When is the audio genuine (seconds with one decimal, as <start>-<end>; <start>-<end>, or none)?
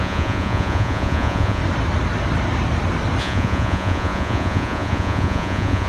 1.6-3.2